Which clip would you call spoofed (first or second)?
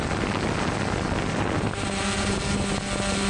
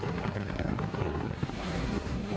second